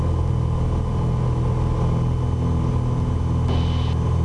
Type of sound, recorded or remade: recorded